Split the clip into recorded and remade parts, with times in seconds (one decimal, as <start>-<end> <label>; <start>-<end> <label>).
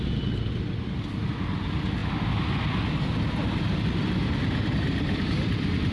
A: 0.0-5.9 recorded